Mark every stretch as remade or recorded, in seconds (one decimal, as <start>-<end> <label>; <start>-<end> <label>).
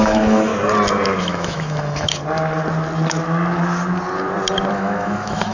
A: 0.0-0.5 remade; 0.5-1.2 recorded; 1.2-2.2 remade; 2.2-4.7 recorded; 4.7-5.5 remade